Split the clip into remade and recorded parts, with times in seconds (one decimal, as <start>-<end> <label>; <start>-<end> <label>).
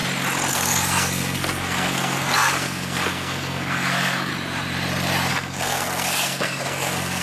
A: 0.0-0.5 recorded; 0.5-4.3 remade; 4.3-5.3 recorded; 5.3-7.2 remade